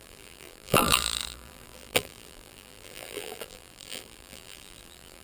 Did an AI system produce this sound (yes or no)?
yes